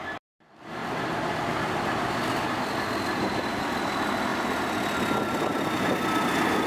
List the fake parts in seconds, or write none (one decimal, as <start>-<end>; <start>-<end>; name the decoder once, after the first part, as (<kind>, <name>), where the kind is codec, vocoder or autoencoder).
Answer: 0.8-1.8 (vocoder, BigVGAN v2)